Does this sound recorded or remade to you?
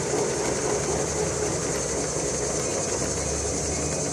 recorded